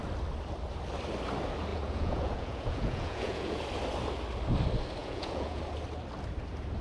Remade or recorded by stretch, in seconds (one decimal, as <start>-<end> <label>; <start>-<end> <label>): 0.0-1.7 recorded; 1.7-3.6 remade; 3.6-5.0 recorded; 5.0-5.6 remade; 5.6-6.8 recorded